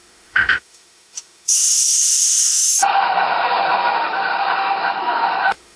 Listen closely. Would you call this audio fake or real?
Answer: fake